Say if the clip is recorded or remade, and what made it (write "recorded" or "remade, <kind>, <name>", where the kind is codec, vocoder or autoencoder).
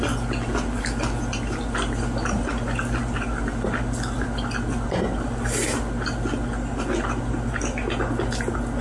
recorded